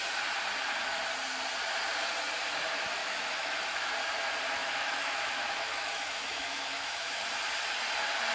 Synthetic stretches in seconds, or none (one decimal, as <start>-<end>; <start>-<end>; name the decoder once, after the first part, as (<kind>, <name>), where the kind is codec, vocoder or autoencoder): 3.0-3.9 (autoencoder, DAC-VAE); 4.6-7.2